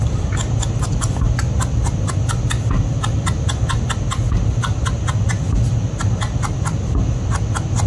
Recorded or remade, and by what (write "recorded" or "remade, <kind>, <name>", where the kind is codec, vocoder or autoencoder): recorded